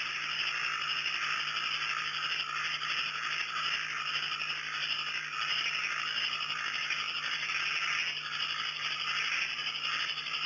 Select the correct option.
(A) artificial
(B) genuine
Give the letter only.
B